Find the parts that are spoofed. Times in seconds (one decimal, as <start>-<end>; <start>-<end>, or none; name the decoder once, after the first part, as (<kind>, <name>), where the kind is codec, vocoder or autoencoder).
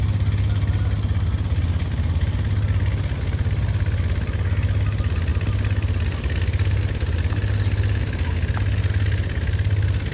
none